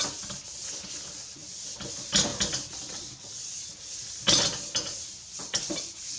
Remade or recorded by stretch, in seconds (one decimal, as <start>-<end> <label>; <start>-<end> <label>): 0.0-6.2 recorded